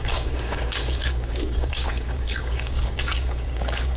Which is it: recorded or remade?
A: remade